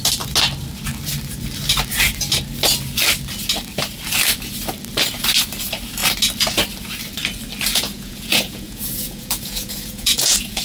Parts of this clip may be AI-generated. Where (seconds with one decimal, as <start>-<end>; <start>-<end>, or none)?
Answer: 7.7-10.6